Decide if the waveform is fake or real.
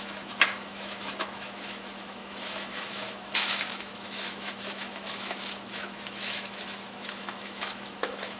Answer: fake